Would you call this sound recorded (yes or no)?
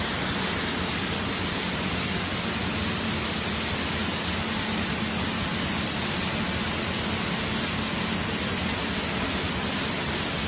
yes